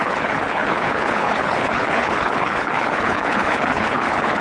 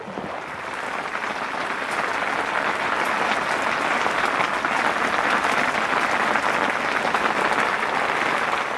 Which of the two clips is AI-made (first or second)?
first